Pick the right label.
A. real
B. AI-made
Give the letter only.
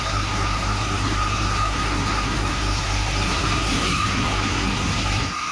B